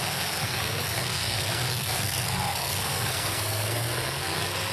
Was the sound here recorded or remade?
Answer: remade